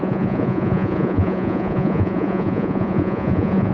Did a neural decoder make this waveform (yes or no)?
yes